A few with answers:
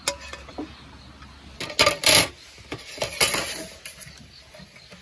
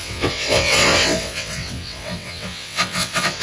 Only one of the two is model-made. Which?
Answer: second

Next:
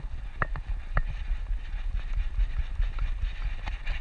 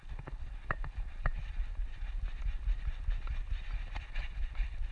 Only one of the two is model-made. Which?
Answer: second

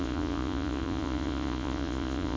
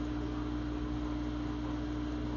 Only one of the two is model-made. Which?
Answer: first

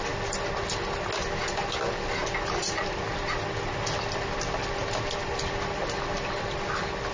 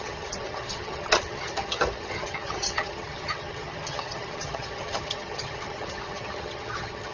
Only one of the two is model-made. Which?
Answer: second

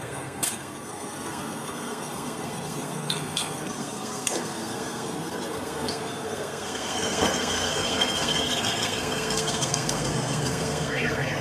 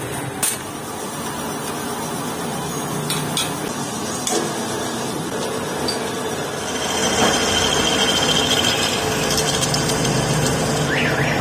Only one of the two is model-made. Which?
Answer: first